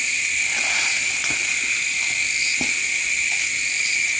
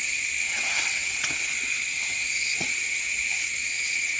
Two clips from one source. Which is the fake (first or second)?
second